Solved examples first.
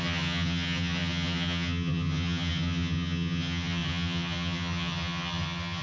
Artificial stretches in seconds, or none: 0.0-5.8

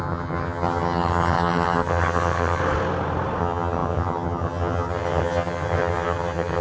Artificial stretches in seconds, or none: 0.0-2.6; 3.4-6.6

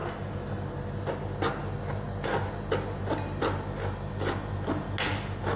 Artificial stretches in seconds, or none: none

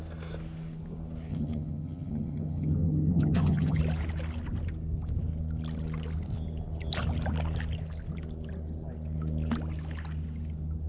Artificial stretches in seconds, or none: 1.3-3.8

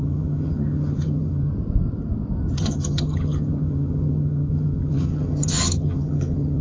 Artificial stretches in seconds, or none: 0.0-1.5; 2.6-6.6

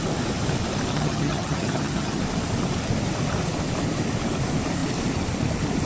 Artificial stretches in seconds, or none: 0.9-2.2

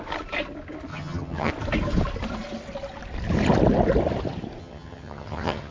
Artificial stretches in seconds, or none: 0.9-1.5; 4.6-5.7

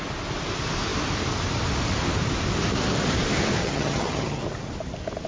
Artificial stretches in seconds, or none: 3.6-4.4